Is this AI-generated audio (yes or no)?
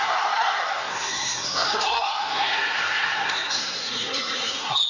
yes